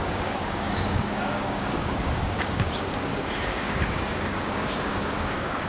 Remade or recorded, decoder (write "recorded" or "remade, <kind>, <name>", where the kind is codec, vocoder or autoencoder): remade, codec, DAC